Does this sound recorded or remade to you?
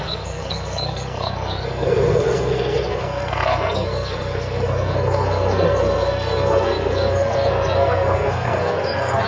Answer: remade